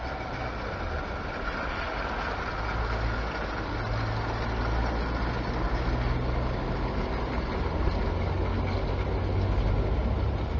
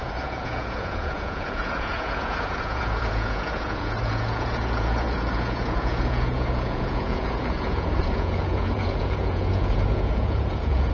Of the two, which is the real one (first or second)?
first